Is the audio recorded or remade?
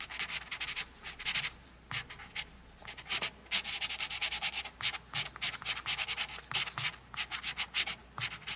recorded